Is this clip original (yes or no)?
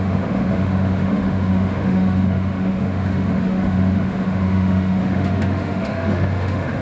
no